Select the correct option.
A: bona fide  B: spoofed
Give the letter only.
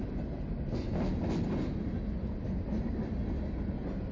A